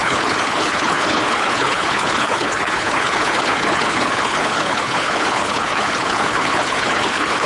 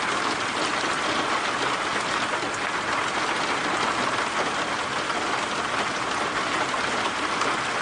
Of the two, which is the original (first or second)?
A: second